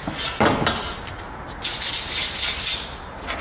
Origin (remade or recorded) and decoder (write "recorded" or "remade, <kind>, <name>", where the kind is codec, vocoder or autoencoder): recorded